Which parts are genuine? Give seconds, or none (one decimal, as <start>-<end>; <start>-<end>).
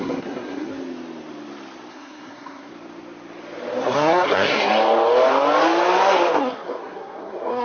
0.8-1.9; 2.7-3.8; 4.7-6.4